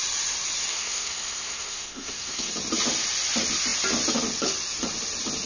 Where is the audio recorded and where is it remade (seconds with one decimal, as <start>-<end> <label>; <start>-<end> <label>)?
0.0-0.7 recorded; 0.7-2.5 remade; 2.5-5.5 recorded